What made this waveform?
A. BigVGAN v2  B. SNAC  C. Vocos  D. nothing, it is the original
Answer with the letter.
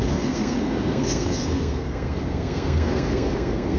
B